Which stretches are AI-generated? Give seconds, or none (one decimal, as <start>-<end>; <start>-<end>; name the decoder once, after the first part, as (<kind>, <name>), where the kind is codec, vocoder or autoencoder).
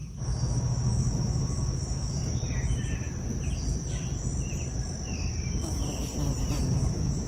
0.0-2.2 (autoencoder, DAC-VAE); 6.6-7.3